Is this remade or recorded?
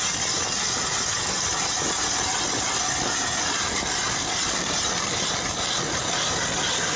recorded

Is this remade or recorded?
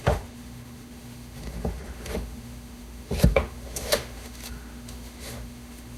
remade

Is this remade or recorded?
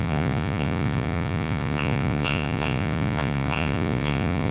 remade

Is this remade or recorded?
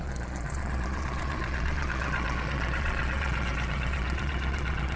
remade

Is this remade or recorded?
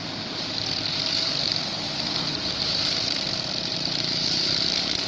remade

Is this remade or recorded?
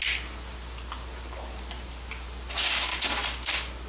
recorded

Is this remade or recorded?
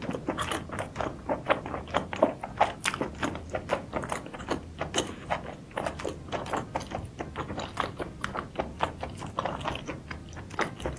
recorded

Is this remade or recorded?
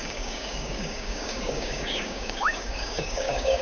remade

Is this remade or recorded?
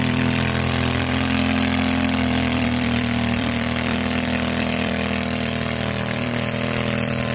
remade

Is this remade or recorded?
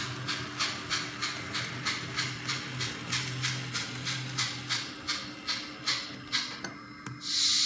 recorded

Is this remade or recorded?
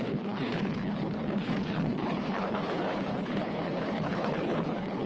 remade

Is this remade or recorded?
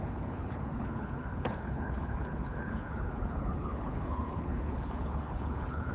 remade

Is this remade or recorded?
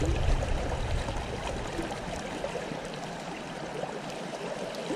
remade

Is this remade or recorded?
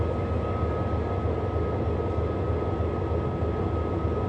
recorded